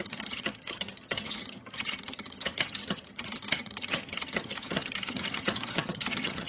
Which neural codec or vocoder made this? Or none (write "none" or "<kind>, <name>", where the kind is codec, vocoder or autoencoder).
vocoder, HiFi-GAN